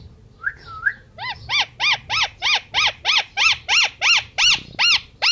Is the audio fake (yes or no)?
no